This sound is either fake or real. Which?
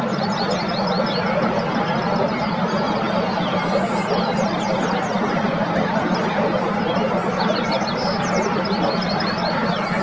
real